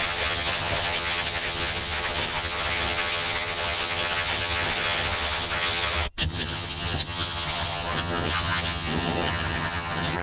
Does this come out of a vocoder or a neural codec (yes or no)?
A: yes